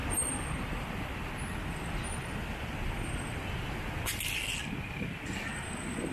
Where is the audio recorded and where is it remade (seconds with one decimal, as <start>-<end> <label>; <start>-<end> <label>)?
0.0-6.1 recorded